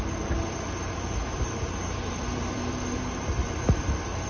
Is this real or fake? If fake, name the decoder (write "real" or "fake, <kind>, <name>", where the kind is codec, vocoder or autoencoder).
fake, vocoder, BigVGAN v2